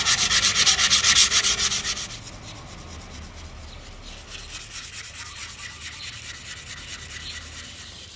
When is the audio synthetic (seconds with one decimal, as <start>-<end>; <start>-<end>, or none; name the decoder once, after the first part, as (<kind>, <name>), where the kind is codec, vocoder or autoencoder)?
none